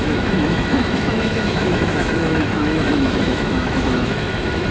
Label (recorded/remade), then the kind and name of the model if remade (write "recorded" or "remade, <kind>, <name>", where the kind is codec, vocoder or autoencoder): remade, autoencoder, DAC-VAE